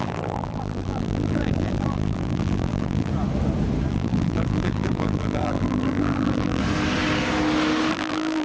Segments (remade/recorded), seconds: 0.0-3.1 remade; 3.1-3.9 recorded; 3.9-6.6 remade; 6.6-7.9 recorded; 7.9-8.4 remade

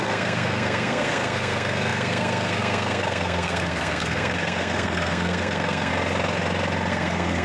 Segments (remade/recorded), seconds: 0.0-5.9 remade; 5.9-6.9 recorded; 6.9-7.4 remade

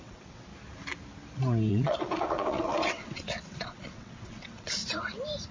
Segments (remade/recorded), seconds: 0.0-0.5 remade; 0.5-1.7 recorded; 1.7-4.8 remade; 4.8-5.5 recorded

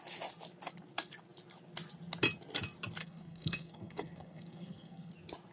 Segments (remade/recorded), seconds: 0.0-3.0 recorded; 3.0-5.1 remade; 5.1-5.5 recorded

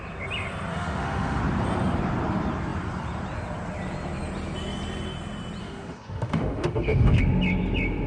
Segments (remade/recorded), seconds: 0.0-0.7 recorded; 0.7-1.4 remade; 1.4-5.6 recorded; 5.6-7.2 remade; 7.2-8.1 recorded

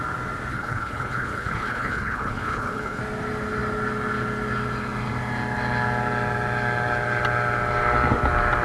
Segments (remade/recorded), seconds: 0.0-0.5 recorded; 0.5-3.0 remade; 3.0-8.6 recorded

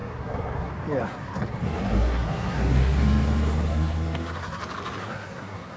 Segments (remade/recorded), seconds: 0.0-0.7 remade; 0.7-1.1 recorded; 1.1-4.6 remade; 4.6-5.0 recorded; 5.0-5.8 remade